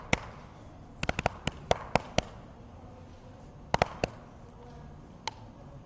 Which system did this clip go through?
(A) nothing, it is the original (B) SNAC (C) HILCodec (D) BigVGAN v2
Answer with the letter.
A